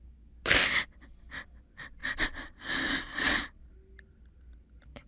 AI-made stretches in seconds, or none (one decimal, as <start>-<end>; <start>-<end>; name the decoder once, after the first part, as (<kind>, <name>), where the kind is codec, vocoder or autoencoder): 2.0-3.7 (vocoder, Vocos)